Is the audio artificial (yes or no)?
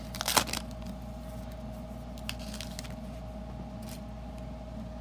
no